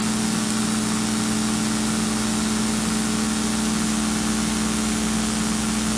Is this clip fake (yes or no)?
no